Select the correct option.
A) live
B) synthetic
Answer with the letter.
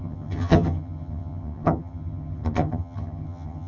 B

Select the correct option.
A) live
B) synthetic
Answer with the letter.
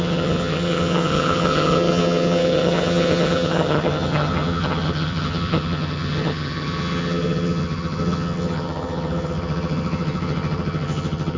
B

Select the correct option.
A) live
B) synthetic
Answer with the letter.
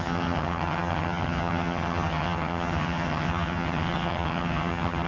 B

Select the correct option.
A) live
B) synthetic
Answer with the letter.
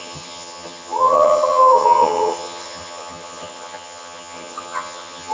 B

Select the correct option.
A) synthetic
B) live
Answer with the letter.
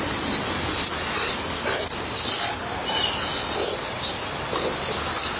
B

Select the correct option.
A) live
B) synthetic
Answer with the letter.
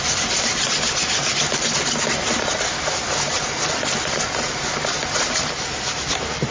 A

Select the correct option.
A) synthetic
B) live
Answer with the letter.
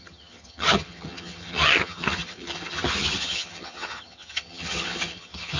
A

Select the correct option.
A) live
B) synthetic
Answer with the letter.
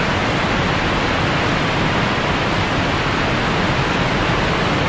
A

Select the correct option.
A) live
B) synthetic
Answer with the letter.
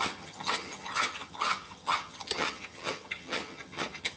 B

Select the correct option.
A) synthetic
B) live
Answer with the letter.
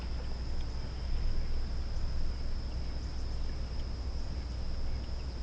B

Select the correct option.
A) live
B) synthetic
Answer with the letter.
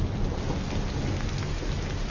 A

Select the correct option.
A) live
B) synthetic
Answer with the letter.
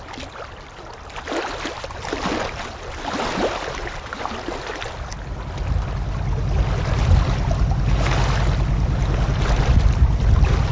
A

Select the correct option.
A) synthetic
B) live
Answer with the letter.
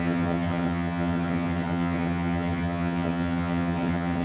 A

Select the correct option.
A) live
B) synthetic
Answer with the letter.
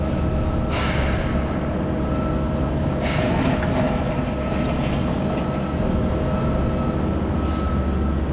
A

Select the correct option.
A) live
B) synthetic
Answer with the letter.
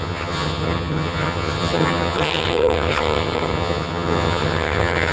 B